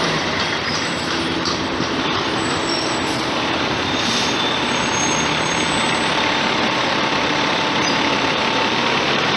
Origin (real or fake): fake